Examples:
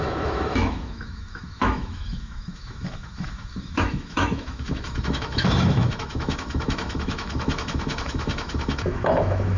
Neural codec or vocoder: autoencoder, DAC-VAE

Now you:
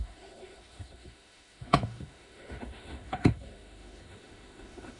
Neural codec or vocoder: autoencoder, DAC-VAE